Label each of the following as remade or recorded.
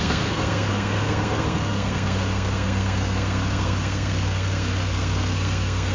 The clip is remade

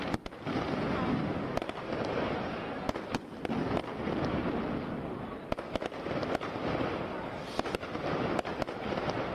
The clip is recorded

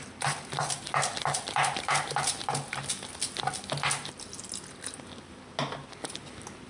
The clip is recorded